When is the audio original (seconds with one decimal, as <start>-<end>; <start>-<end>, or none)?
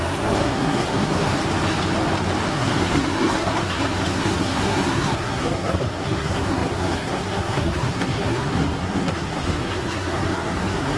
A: 1.4-2.5